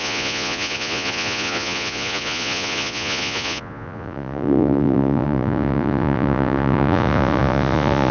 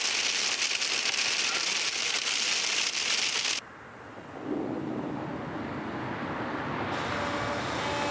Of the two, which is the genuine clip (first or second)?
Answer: second